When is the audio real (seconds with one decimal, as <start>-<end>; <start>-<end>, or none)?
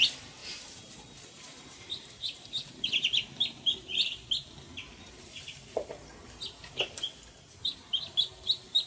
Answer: 0.0-0.4; 2.7-8.9